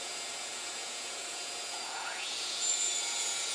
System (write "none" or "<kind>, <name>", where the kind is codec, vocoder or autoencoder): vocoder, Vocos